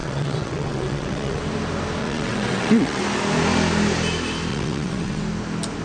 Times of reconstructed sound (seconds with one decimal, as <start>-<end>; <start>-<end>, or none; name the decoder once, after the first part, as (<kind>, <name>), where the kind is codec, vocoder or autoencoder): 0.0-1.4 (vocoder, WaveNeXt); 2.0-3.0; 4.5-5.2

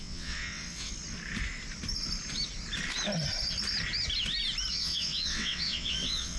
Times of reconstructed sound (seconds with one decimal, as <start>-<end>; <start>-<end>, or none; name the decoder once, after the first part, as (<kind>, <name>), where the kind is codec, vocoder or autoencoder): 0.0-0.9 (vocoder, WaveNeXt); 4.7-6.4

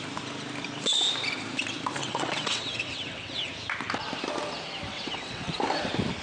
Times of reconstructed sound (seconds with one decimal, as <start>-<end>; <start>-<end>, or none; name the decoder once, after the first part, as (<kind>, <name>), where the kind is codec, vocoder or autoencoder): 2.0-3.5 (vocoder, WaveNeXt); 4.9-5.5

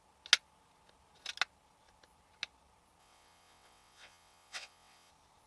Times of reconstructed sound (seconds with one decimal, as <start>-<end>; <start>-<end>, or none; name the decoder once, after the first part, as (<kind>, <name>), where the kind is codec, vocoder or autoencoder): 3.0-5.1 (vocoder, WaveNeXt)

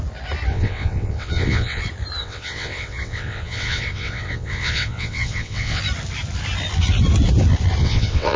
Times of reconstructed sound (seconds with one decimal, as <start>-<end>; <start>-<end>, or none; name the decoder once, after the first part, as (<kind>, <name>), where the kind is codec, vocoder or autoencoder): 0.5-1.8 (vocoder, WaveNeXt); 2.2-5.8; 7.8-8.4

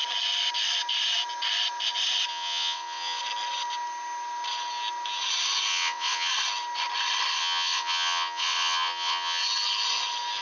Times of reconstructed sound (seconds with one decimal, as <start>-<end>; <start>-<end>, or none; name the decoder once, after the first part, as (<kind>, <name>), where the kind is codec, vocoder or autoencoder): 2.3-3.2 (vocoder, WaveNeXt); 5.7-6.3; 7.4-9.4

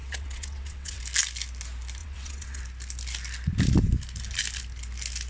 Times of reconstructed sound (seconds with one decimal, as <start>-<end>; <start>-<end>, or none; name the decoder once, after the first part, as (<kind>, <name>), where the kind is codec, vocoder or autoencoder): 0.0-1.0 (vocoder, WaveNeXt); 2.0-2.6

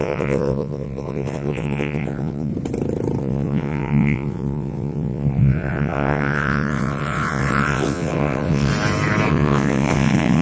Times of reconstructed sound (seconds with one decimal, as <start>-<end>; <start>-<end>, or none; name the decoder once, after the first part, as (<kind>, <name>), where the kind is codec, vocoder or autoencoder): 0.0-2.5 (vocoder, WaveNeXt); 3.2-8.7; 9.3-10.4